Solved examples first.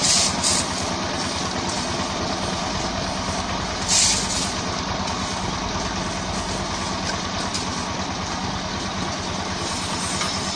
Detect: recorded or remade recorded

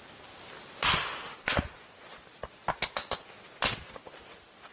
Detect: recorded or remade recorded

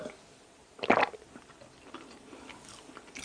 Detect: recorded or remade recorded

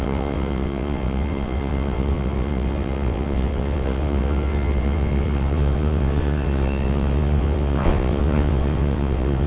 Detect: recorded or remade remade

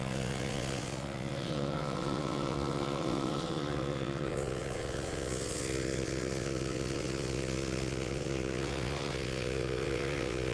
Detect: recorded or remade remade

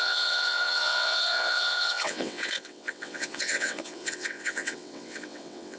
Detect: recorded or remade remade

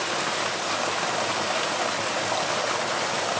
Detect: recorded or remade recorded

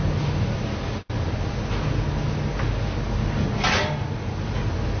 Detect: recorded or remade recorded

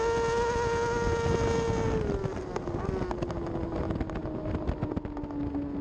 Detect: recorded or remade recorded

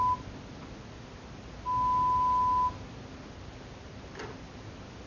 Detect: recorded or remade recorded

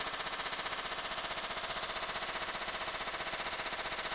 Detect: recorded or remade recorded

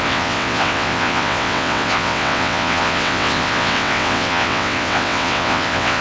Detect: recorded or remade remade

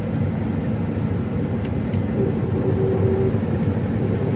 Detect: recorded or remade recorded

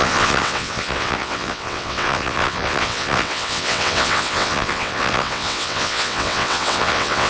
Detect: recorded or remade remade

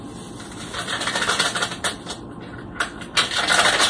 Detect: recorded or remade recorded